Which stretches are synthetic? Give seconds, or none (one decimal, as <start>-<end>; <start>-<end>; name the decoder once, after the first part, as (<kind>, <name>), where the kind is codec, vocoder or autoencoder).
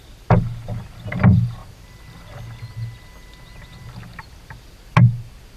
none